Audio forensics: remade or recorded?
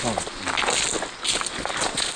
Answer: recorded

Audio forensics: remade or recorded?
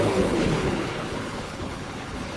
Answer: remade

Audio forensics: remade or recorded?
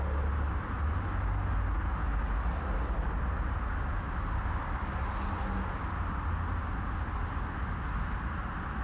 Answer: recorded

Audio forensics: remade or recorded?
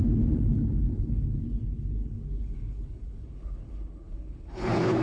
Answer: remade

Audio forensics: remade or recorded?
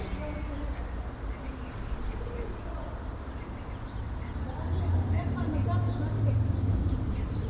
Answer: recorded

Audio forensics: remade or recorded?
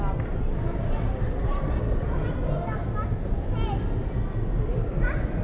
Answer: recorded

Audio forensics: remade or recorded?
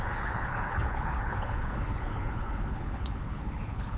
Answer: remade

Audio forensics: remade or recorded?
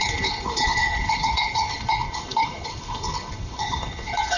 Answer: remade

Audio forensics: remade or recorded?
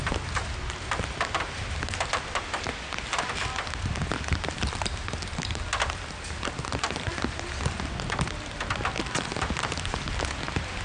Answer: recorded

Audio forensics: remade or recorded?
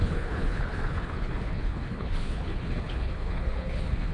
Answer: remade